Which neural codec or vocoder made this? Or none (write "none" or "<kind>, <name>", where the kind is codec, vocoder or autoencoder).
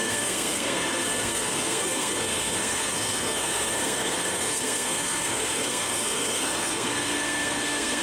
codec, SNAC